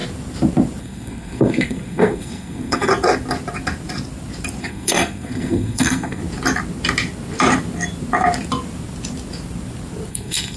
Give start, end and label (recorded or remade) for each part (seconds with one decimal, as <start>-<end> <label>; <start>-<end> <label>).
0.0-0.8 recorded; 0.8-2.9 remade; 2.9-4.6 recorded; 4.6-6.2 remade; 6.2-10.1 recorded; 10.1-10.6 remade